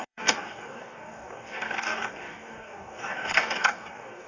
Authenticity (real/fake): fake